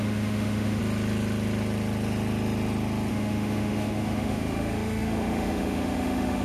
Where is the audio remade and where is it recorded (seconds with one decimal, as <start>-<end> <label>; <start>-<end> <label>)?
0.0-0.8 remade; 0.8-3.1 recorded; 3.1-6.4 remade